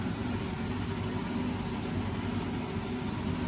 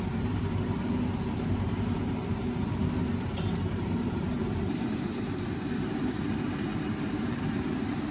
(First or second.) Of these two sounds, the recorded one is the first